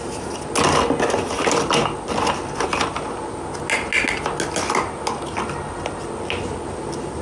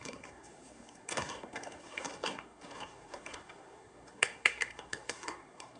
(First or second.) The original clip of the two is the first